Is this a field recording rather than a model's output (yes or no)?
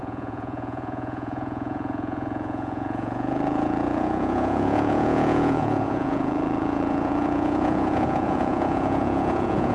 no